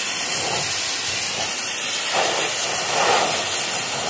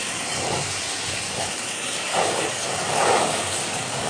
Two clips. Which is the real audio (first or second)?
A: first